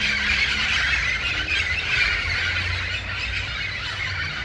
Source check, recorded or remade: recorded